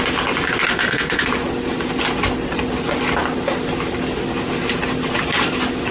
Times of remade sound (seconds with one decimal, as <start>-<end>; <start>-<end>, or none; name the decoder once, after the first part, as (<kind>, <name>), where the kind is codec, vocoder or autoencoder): 0.7-1.3 (codec, SNAC)